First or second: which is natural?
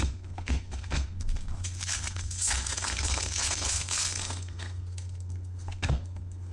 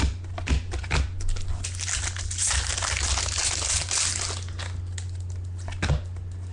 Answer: second